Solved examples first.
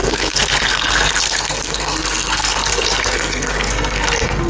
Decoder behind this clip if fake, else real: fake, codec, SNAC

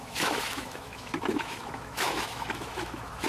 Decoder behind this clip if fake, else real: fake, autoencoder, DAC-VAE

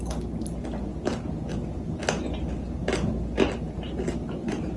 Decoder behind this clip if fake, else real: real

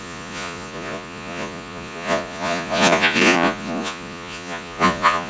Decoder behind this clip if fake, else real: fake, vocoder, Vocos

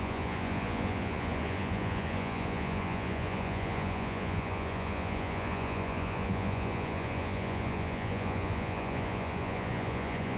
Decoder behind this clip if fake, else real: fake, vocoder, Vocos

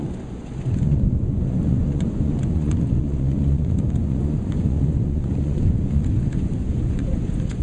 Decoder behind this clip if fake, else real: fake, vocoder, Vocos